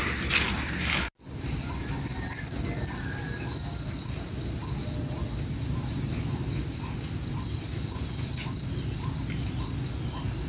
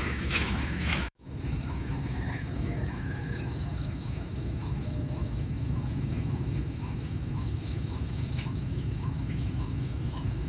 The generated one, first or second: second